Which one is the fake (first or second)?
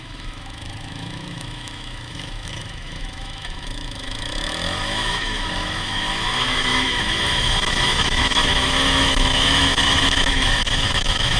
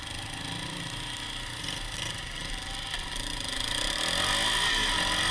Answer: first